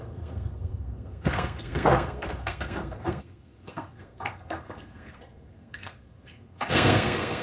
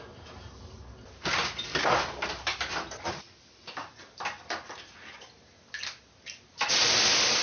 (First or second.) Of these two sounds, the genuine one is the second